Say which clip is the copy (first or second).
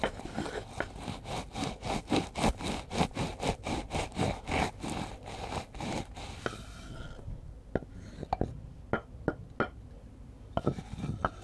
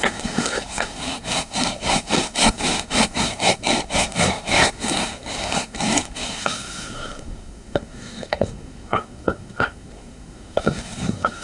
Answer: second